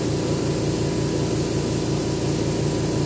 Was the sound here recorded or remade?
recorded